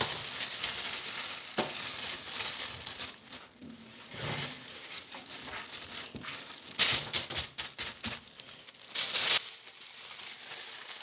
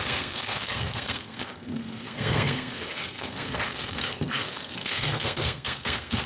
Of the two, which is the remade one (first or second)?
second